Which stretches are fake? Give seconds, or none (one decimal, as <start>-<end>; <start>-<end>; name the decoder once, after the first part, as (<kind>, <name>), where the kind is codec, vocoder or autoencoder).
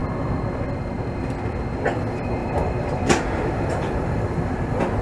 2.4-5.0 (vocoder, BigVGAN v2)